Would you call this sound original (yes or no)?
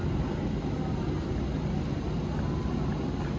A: yes